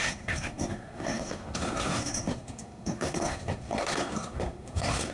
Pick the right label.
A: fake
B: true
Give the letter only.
A